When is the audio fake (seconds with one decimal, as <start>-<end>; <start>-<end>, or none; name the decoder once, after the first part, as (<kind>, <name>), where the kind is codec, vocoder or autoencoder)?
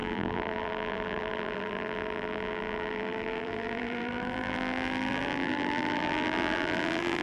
0.0-7.2 (vocoder, BigVGAN v2)